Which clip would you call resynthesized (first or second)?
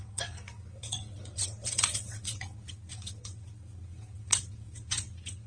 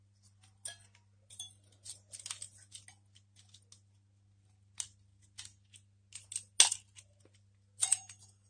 first